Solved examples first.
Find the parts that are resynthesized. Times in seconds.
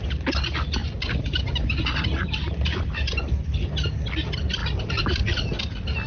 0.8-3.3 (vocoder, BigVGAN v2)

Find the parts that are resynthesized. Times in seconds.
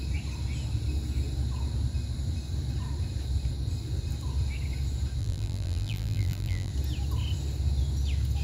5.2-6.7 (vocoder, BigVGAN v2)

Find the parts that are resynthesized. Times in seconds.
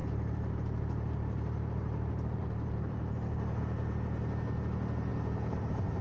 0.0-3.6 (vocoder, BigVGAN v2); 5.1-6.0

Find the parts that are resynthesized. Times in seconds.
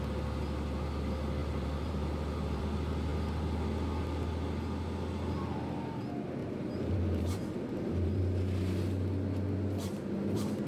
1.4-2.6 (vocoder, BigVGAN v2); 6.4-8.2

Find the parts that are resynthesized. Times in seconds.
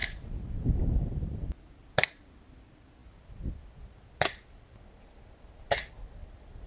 none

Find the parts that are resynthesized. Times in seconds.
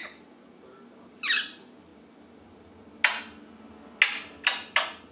1.1-1.9 (vocoder, BigVGAN v2)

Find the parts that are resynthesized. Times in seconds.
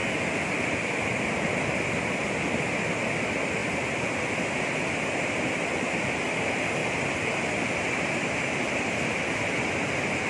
3.6-4.3 (vocoder, BigVGAN v2); 6.8-7.3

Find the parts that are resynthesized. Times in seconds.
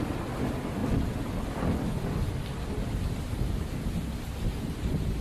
none